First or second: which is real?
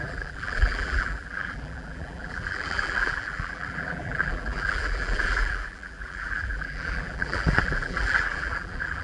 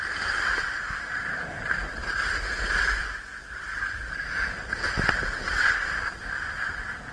second